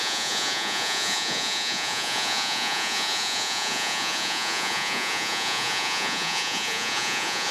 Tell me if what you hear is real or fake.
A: fake